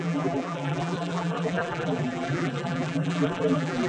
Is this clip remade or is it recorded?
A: remade